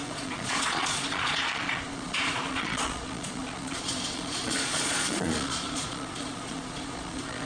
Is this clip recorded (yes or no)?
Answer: no